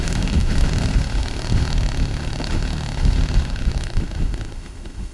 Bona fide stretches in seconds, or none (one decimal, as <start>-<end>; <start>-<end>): none